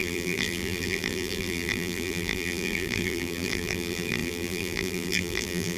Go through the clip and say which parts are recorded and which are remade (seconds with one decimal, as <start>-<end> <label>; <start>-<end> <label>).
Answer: 0.0-5.8 remade